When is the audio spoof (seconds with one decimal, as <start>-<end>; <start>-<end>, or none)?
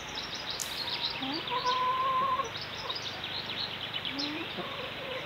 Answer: 0.0-0.6; 3.8-5.3